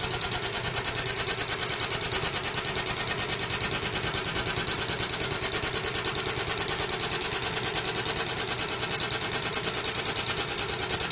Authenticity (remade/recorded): recorded